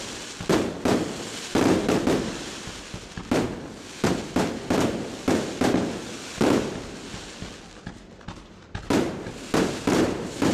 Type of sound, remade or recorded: remade